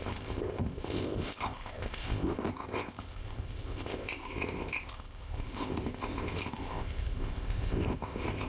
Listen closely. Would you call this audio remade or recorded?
remade